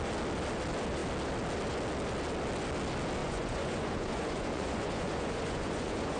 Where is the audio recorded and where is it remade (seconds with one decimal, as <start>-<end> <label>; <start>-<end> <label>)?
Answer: 0.0-3.2 recorded; 3.2-6.2 remade